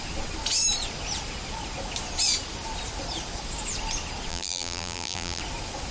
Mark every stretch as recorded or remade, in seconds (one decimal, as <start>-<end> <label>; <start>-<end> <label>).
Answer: 0.0-4.3 recorded; 4.3-5.4 remade; 5.4-5.9 recorded